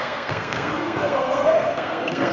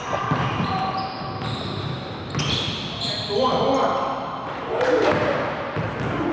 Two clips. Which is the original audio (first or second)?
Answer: second